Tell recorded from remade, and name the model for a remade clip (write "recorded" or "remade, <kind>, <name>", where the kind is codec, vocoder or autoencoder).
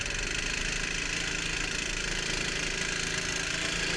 recorded